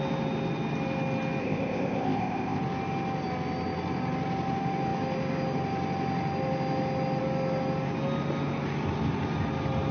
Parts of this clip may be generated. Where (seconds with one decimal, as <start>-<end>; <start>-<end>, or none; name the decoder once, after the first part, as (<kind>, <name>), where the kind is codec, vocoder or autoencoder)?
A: 1.4-2.6 (codec, ZipCodec)